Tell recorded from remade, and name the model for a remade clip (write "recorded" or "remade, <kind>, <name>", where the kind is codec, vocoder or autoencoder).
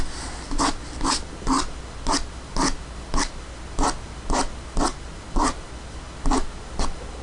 recorded